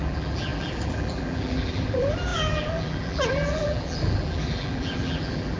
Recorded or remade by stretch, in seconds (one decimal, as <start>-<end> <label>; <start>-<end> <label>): 0.0-5.6 remade